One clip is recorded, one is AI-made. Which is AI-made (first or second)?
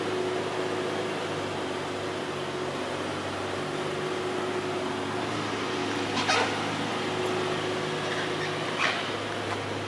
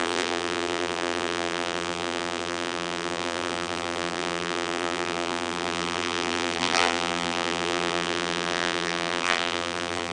second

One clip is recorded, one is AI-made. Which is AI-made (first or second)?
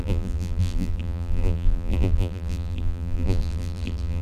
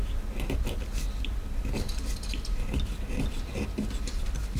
first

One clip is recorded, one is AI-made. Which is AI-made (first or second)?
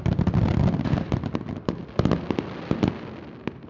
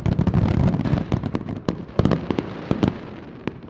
second